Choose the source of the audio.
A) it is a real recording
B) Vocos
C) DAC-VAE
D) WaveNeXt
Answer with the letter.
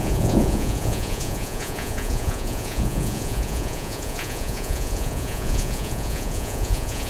B